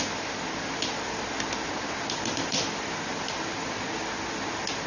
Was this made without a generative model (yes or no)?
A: yes